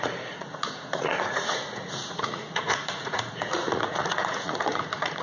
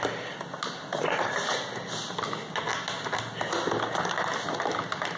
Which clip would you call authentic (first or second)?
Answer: second